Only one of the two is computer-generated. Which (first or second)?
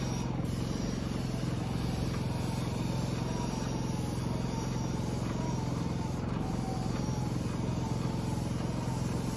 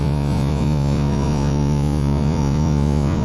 second